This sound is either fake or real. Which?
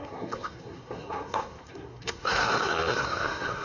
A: fake